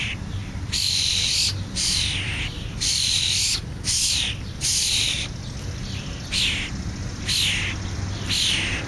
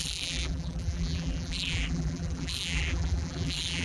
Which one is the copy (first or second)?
second